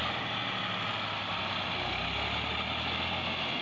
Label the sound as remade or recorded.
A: recorded